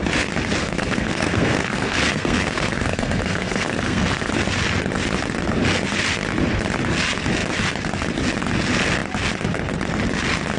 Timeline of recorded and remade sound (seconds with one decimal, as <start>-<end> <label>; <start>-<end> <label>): 0.0-0.6 recorded; 0.6-4.3 remade; 4.3-10.6 recorded